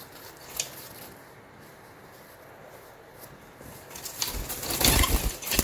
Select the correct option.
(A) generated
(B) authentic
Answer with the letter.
B